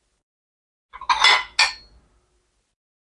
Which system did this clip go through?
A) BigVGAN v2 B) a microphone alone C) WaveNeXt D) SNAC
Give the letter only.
B